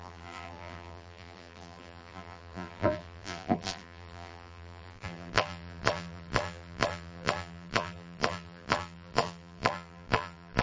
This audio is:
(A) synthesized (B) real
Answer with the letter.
A